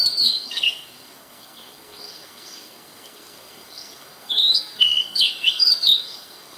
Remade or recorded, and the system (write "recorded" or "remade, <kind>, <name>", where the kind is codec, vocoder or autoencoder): remade, codec, SNAC